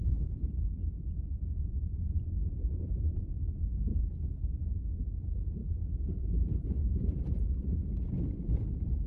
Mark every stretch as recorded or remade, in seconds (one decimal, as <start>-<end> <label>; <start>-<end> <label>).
0.0-0.8 remade; 0.8-1.7 recorded; 1.7-7.8 remade; 7.8-8.4 recorded; 8.4-9.1 remade